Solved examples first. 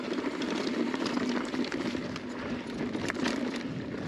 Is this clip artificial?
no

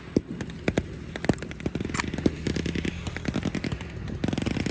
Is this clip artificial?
no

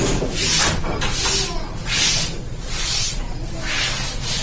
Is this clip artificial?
no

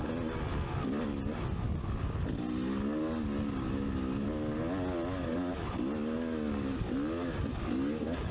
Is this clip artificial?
no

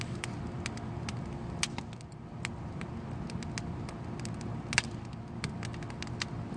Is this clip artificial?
no